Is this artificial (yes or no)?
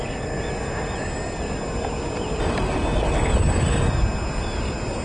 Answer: no